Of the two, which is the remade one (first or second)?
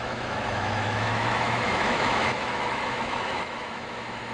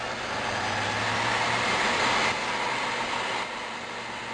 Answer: first